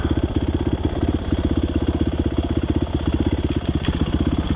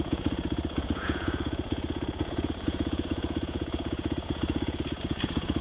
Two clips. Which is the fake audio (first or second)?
second